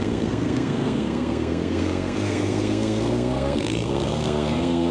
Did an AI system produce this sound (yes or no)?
yes